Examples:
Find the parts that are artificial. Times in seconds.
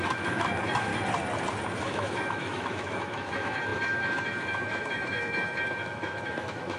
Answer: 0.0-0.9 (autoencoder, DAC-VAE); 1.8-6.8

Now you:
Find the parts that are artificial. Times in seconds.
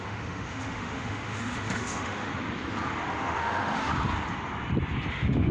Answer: 0.0-2.3 (autoencoder, DAC-VAE); 3.1-3.9; 5.1-5.5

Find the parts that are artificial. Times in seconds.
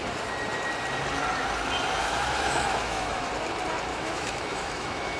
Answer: 2.0-3.3 (autoencoder, DAC-VAE); 3.9-5.2